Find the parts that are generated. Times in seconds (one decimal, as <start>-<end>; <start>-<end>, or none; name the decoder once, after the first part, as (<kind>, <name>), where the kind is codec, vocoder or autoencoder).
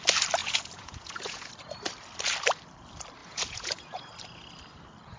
0.4-1.5 (vocoder, Vocos); 3.2-4.1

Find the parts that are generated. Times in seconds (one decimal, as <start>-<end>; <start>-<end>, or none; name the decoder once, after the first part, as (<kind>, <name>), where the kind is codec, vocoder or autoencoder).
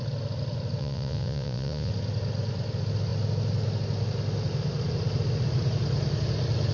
0.8-1.9 (vocoder, Vocos)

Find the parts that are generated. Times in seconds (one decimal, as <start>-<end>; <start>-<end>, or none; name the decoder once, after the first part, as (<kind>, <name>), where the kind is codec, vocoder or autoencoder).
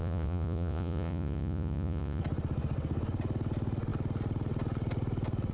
0.0-2.2 (vocoder, Vocos)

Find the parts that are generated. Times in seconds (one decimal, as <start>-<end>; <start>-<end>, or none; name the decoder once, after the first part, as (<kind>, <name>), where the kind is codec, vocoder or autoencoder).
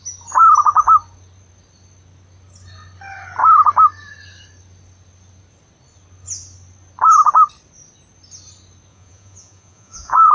8.9-10.3 (vocoder, Vocos)